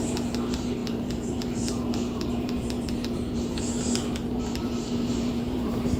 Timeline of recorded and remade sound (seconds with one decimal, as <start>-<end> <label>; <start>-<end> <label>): 0.0-6.0 remade